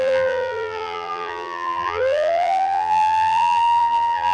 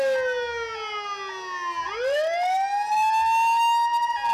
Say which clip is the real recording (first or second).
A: second